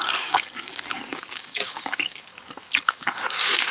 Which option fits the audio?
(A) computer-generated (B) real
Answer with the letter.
A